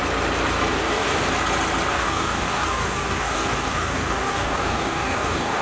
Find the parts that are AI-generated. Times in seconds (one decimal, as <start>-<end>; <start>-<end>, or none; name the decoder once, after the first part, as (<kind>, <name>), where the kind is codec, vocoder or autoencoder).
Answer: 0.7-1.3 (codec, DAC); 1.9-5.6